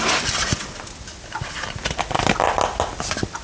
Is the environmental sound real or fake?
real